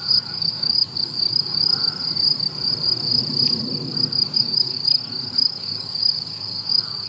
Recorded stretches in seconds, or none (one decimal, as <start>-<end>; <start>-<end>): 1.7-4.1; 4.8-5.3